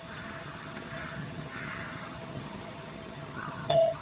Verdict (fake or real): fake